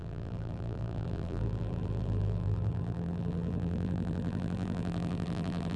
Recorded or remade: remade